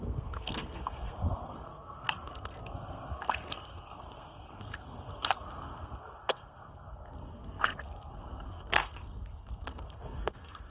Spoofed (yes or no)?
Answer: yes